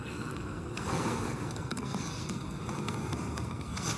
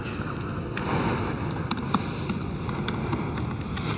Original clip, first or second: second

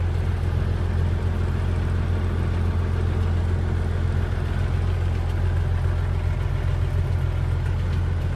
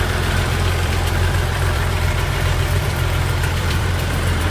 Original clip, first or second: first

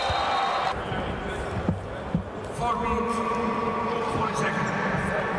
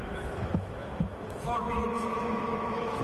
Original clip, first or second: first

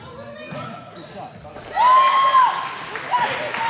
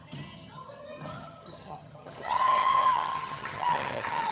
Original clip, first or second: first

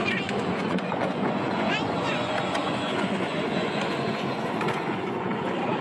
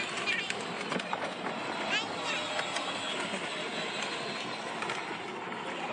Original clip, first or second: second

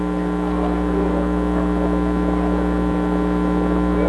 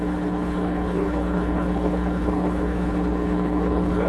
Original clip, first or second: first